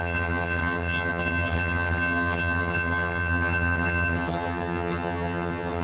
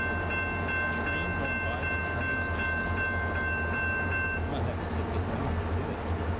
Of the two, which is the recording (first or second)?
second